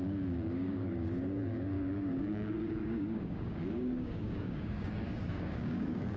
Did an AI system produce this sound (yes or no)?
yes